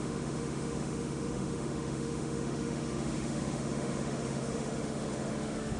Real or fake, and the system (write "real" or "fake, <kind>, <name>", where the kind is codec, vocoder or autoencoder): fake, autoencoder, DAC-VAE